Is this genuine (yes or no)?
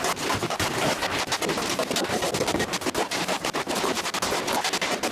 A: yes